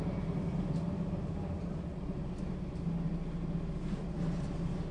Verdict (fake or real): real